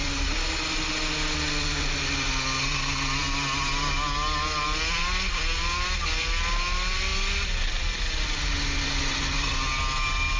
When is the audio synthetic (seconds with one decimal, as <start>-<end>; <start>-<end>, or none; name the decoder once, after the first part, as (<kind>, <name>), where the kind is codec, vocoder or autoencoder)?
none